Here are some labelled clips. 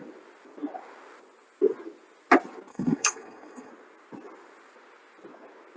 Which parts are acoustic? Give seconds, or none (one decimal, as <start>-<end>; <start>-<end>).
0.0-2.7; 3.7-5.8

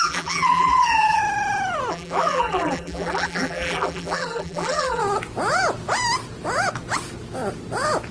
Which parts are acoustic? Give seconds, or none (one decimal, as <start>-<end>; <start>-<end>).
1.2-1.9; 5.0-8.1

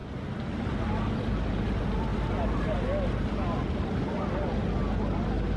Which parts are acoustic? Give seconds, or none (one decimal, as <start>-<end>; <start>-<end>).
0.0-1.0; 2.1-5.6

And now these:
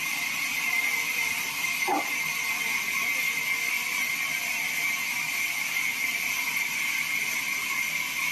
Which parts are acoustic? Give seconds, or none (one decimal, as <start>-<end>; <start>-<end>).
2.3-5.3

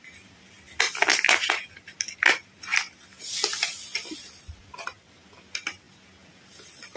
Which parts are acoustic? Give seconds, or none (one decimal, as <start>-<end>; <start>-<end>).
0.0-7.0

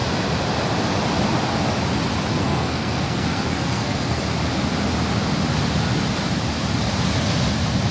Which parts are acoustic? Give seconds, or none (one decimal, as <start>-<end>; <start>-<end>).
0.0-2.3; 4.2-7.9